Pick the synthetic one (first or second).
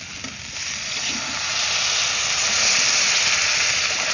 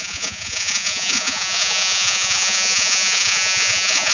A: second